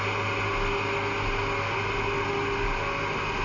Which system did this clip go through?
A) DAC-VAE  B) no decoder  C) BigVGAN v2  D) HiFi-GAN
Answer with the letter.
B